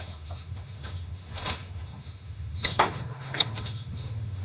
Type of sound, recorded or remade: remade